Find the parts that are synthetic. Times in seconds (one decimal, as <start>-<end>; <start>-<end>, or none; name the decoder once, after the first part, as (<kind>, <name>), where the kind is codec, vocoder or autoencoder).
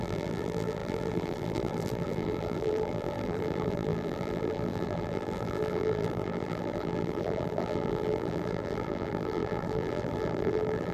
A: 0.0-10.9 (vocoder, BigVGAN v2)